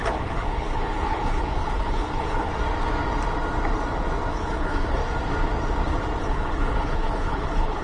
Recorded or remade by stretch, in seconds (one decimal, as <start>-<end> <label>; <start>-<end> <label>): 0.0-2.5 remade; 2.5-4.3 recorded; 4.3-5.0 remade; 5.0-6.2 recorded; 6.2-7.8 remade